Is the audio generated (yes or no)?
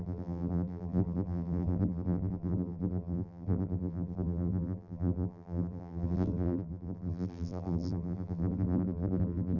yes